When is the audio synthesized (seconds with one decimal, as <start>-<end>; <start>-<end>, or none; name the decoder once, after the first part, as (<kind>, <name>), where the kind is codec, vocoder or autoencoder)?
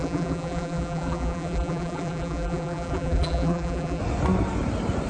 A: 0.0-4.0 (vocoder, BigVGAN v2)